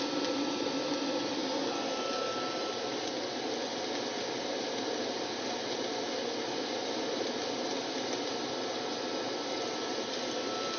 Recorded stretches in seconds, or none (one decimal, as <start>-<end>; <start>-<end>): 0.0-10.8